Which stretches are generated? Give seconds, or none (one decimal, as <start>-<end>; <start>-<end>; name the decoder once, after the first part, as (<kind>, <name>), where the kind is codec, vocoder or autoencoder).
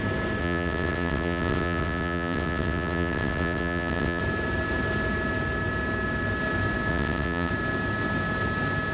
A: 0.4-4.2 (vocoder, WaveNeXt); 6.9-7.5